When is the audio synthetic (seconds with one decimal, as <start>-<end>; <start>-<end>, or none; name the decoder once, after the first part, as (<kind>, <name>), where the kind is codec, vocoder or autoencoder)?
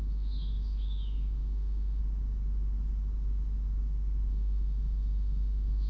0.0-2.0 (autoencoder, DAC-VAE); 4.3-5.9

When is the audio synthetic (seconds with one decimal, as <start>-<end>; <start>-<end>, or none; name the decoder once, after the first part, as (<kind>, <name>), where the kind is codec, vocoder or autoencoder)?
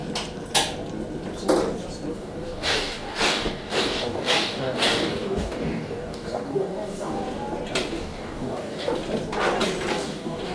2.1-7.2 (codec, DAC); 7.9-8.9; 9.9-10.5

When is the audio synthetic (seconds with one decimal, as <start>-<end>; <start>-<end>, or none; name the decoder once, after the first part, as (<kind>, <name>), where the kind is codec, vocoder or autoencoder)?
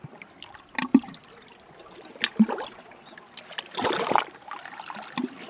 none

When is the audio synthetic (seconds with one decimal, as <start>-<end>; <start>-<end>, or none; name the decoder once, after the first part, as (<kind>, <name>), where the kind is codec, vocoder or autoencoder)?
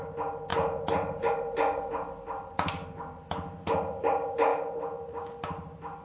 none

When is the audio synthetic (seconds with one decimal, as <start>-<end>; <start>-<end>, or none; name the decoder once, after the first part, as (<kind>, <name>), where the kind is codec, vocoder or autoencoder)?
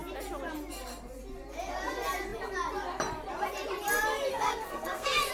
4.3-5.3 (codec, SNAC)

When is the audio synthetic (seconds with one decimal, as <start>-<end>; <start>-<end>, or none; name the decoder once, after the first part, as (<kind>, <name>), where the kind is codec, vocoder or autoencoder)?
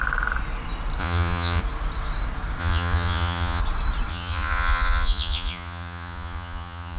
1.0-1.6 (vocoder, Vocos); 2.6-3.6; 4.1-7.0